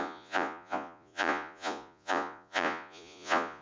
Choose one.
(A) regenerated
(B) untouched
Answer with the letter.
A